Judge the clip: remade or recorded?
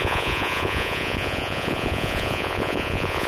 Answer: remade